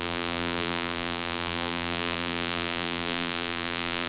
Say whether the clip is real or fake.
fake